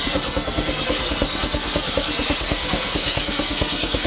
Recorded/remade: remade